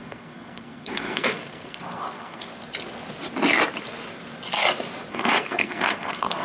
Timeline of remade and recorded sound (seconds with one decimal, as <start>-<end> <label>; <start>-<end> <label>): 0.0-2.5 remade; 2.5-5.1 recorded; 5.1-6.4 remade